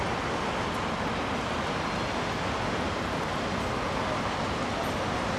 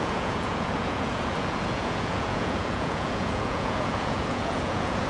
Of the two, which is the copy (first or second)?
second